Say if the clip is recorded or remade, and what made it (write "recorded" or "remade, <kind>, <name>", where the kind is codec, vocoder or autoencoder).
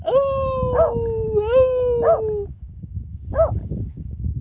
remade, codec, DAC